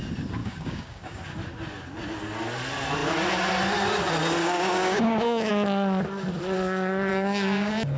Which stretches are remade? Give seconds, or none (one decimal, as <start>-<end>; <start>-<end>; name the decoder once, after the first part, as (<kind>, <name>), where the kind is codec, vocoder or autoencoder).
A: 0.4-1.2 (codec, DAC); 4.4-5.5; 7.1-8.0